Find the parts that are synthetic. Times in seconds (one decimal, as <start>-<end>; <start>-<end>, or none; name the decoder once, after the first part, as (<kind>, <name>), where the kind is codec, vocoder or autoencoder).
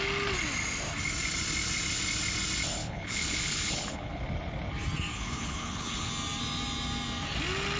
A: 2.8-4.2 (codec, HILCodec); 5.1-6.1